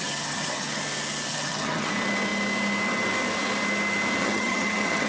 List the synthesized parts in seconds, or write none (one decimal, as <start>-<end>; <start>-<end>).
0.0-0.8; 1.3-1.9; 4.2-5.1